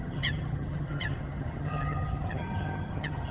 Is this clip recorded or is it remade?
remade